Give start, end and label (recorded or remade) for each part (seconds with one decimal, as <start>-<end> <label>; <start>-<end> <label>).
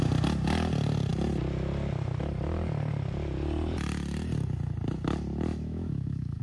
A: 0.0-5.5 recorded; 5.5-6.4 remade